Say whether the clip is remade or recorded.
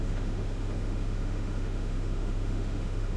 remade